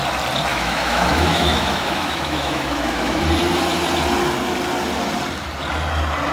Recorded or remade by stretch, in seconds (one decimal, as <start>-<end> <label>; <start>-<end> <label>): 0.0-0.5 recorded; 0.5-3.2 remade; 3.2-6.3 recorded